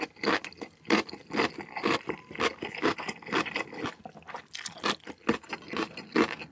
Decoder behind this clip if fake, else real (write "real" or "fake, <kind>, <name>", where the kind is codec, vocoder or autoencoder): real